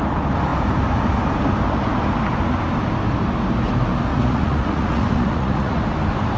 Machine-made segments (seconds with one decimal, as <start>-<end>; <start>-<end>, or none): 4.1-5.8